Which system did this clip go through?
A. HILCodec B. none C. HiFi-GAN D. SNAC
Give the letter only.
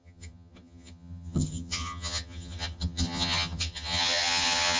C